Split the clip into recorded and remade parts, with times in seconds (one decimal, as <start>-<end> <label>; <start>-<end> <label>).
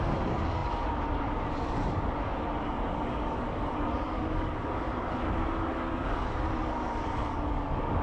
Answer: 0.0-8.0 remade